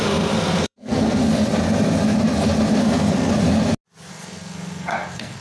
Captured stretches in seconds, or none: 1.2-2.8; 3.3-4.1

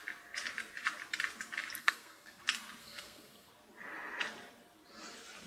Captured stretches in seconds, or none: 0.0-1.8; 2.4-2.8; 3.5-5.5